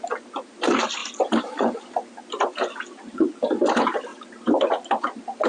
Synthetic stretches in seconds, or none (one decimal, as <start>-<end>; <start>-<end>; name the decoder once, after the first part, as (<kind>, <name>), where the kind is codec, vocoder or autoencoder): 1.0-2.2 (vocoder, BigVGAN v2)